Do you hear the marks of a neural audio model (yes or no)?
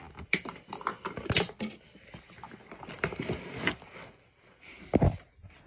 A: no